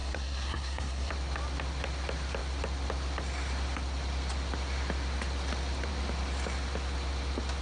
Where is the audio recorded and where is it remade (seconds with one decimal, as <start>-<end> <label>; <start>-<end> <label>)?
0.0-1.1 remade; 1.1-7.6 recorded